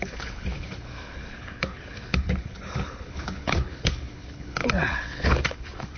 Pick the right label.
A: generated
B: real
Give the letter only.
A